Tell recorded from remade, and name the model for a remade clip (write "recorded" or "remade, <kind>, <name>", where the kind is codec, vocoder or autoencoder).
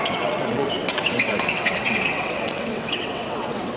remade, vocoder, WaveNeXt